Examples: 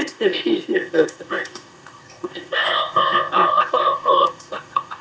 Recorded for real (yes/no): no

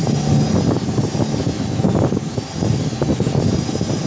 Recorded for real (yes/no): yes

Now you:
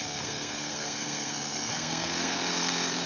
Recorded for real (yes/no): no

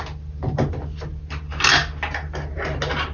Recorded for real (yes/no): yes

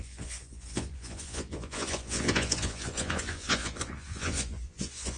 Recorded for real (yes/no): no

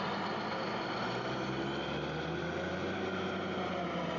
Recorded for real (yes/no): yes